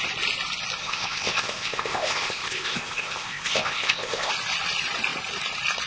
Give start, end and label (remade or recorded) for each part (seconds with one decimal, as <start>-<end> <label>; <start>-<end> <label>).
0.0-0.8 recorded; 0.8-4.3 remade; 4.3-5.9 recorded